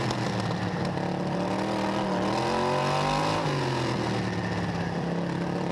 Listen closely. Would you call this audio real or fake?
real